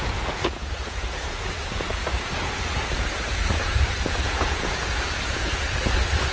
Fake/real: fake